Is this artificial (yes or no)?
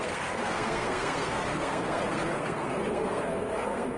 yes